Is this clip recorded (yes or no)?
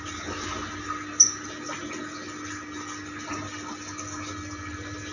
yes